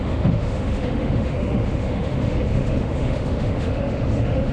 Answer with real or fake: fake